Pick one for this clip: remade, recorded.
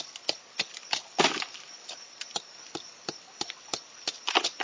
recorded